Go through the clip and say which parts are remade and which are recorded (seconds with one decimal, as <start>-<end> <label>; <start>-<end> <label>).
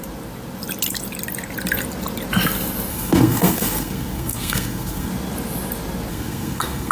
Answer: 0.0-2.9 recorded; 2.9-5.1 remade; 5.1-6.1 recorded; 6.1-6.9 remade